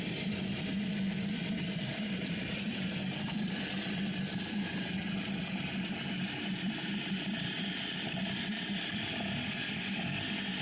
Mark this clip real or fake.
fake